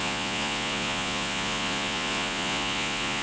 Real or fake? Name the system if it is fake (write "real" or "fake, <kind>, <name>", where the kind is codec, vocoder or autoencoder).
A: fake, vocoder, Vocos